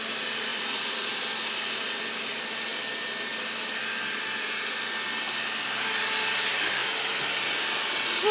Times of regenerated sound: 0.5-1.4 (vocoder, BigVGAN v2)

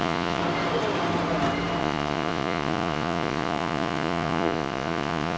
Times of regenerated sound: 0.0-0.4 (vocoder, Vocos); 1.8-5.4

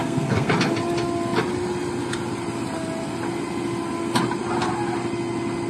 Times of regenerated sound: 0.0-0.5 (codec, SNAC)

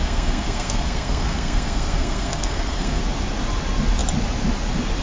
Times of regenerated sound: 0.0-3.0 (codec, SNAC)

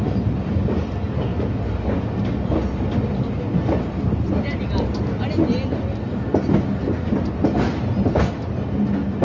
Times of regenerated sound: none